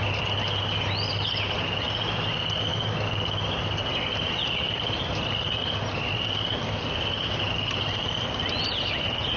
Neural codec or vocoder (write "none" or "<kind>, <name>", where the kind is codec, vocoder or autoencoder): none